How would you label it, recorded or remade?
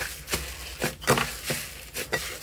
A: recorded